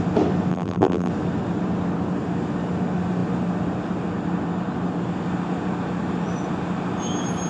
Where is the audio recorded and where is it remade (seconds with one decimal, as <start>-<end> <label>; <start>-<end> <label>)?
0.0-0.5 recorded; 0.5-1.1 remade; 1.1-7.5 recorded